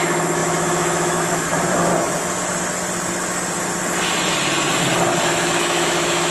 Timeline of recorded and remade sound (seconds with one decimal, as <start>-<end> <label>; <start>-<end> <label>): 0.0-1.9 remade; 1.9-5.2 recorded; 5.2-6.3 remade